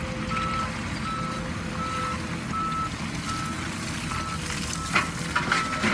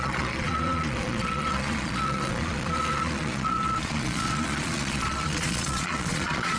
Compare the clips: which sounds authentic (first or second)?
first